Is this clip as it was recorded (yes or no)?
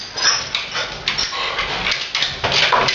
yes